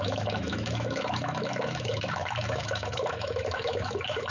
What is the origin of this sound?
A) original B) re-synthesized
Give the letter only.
B